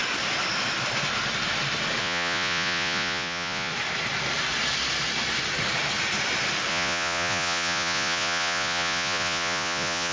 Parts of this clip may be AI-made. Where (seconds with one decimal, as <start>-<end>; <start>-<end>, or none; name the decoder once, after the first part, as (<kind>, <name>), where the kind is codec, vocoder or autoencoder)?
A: 2.0-3.7 (vocoder, Vocos); 6.7-10.1